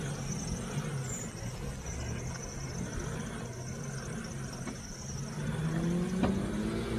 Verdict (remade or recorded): recorded